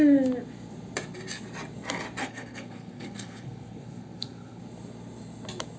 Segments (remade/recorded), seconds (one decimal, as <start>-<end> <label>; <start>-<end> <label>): 0.0-2.2 recorded; 2.2-4.6 remade; 4.6-5.8 recorded